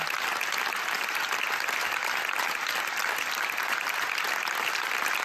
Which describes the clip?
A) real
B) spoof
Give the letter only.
A